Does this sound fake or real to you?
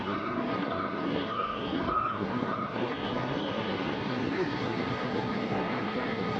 fake